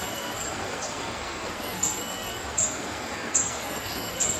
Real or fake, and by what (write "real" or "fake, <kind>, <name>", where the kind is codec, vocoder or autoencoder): fake, codec, SNAC